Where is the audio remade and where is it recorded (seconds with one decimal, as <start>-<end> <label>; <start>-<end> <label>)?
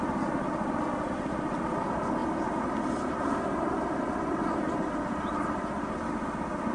0.0-6.7 recorded